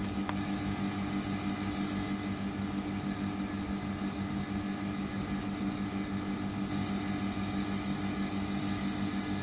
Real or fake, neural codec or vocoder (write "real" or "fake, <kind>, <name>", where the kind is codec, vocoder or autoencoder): real